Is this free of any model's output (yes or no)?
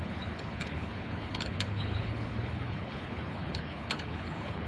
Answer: no